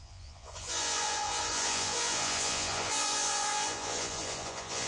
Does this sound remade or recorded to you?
remade